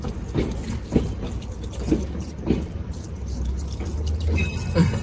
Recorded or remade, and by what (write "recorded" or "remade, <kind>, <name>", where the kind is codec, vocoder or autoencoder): recorded